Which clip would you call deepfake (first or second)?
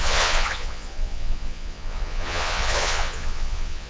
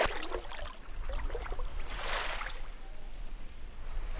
first